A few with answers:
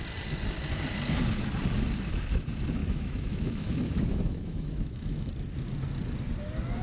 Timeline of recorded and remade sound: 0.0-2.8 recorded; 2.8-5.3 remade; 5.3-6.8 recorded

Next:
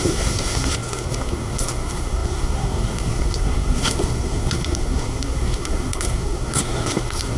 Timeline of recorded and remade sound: 0.0-7.4 remade

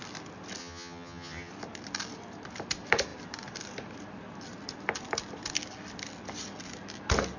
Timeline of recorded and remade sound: 0.0-0.6 recorded; 0.6-1.5 remade; 1.5-7.4 recorded

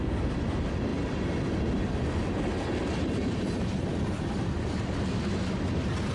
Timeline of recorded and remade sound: 0.0-6.1 recorded

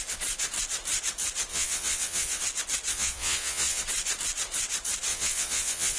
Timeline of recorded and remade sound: 0.0-1.5 recorded; 1.5-2.4 remade; 2.4-2.9 recorded; 2.9-3.8 remade; 3.8-5.1 recorded; 5.1-6.0 remade